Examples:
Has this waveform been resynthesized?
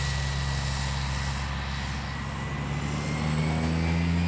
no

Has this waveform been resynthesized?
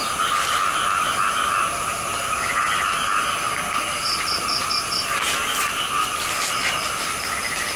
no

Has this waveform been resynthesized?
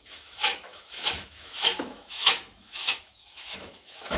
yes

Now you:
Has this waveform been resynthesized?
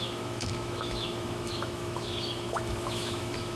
yes